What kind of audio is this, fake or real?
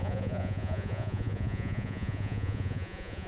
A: fake